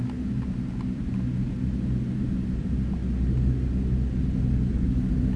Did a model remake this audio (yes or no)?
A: no